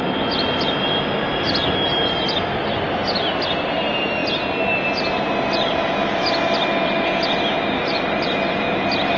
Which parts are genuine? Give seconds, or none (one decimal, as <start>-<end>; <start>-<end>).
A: 0.0-9.2

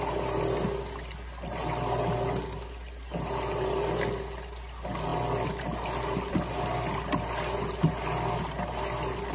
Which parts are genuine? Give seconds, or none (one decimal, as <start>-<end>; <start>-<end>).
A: 0.0-9.3

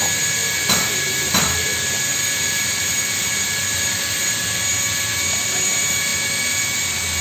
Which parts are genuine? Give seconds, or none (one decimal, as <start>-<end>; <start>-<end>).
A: 0.0-0.4; 4.7-6.1; 6.7-7.2

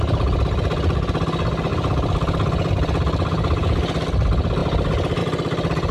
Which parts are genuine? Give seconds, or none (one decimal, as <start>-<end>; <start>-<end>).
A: 0.0-5.9

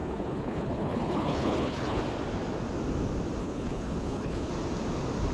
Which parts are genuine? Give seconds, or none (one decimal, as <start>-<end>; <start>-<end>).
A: 2.0-3.4; 4.5-5.3

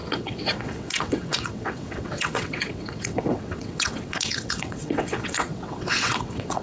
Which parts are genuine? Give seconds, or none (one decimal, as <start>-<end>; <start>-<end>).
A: none